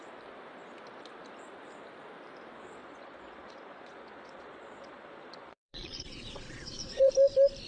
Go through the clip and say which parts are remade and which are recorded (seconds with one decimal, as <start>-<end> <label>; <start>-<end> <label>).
0.0-2.8 recorded; 2.8-7.1 remade; 7.1-7.7 recorded